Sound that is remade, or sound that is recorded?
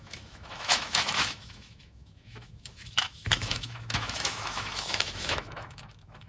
remade